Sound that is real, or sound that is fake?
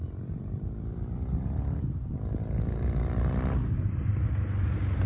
real